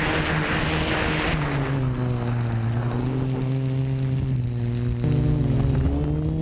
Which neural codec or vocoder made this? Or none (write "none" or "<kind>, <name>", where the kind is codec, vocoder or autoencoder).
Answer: none